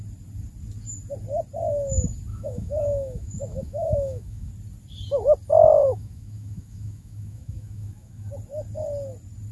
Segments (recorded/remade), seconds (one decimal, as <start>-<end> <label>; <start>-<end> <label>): 0.0-2.3 recorded; 2.3-4.5 remade; 4.5-5.9 recorded; 5.9-8.3 remade; 8.3-9.5 recorded